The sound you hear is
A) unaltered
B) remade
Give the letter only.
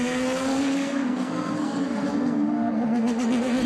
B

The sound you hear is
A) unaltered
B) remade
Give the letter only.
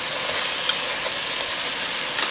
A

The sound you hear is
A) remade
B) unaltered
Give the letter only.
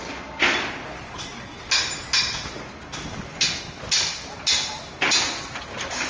B